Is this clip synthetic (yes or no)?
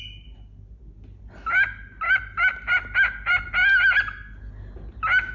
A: no